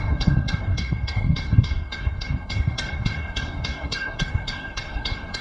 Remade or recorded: remade